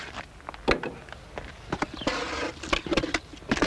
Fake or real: real